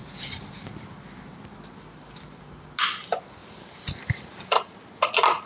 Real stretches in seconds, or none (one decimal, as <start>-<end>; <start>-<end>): 0.0-3.4; 4.9-5.5